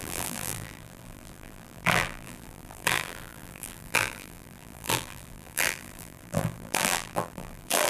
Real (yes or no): no